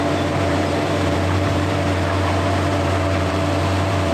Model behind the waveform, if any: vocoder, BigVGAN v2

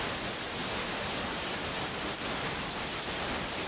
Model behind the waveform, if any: none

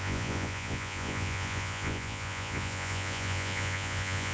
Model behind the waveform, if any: vocoder, Vocos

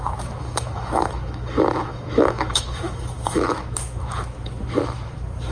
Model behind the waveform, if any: autoencoder, DAC-VAE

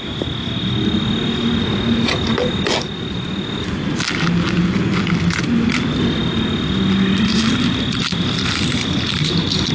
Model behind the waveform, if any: none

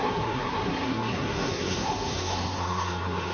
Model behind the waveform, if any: codec, SNAC